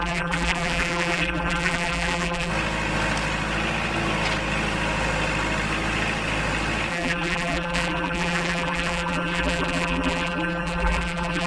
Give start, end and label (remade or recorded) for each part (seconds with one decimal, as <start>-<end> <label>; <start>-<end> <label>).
0.0-2.5 remade; 2.5-6.9 recorded; 6.9-11.5 remade